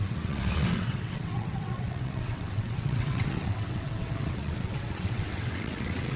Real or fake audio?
fake